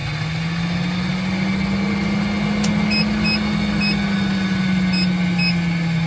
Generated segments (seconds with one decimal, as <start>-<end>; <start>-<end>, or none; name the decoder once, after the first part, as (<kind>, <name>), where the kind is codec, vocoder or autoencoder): none